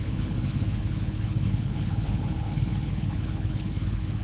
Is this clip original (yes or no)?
no